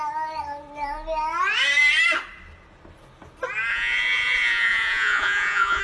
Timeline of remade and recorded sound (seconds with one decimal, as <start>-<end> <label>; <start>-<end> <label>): 0.0-3.7 recorded; 3.7-5.8 remade